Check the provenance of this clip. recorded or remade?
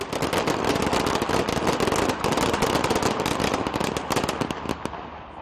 recorded